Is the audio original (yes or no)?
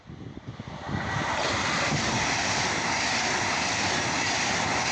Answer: yes